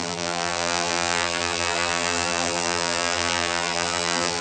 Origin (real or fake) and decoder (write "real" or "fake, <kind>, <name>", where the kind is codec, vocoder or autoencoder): fake, vocoder, BigVGAN v2